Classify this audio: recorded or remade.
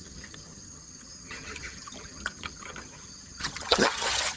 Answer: remade